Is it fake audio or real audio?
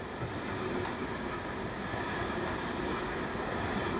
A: real